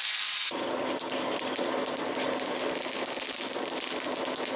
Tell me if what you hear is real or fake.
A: real